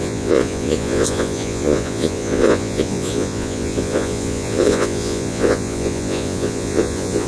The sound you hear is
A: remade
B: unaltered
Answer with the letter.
A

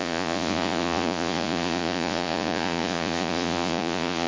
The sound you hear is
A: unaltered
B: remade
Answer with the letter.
B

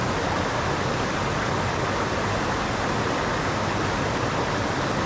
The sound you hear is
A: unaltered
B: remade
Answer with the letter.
A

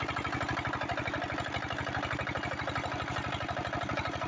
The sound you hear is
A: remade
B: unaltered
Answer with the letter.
B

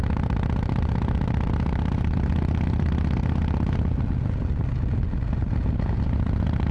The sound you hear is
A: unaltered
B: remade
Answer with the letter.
A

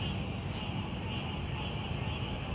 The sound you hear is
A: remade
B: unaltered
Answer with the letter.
B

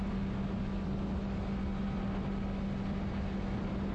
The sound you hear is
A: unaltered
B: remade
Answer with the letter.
A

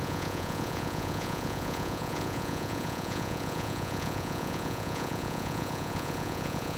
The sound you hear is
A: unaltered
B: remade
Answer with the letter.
B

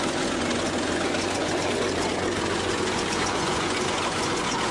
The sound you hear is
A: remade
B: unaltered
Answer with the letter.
A